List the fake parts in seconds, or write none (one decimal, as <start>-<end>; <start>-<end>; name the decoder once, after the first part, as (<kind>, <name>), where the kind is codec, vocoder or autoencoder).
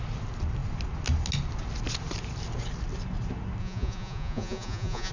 3.6-5.1 (vocoder, Vocos)